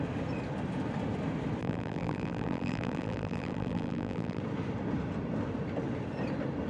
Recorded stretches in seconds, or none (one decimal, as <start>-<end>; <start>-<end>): 0.0-1.6; 4.4-6.7